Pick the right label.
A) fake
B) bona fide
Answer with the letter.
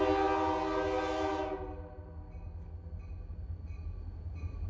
B